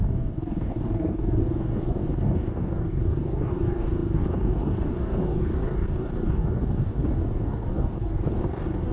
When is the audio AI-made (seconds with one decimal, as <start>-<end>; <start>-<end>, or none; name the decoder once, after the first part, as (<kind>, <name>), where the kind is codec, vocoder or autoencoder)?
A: 0.0-8.9 (codec, DAC)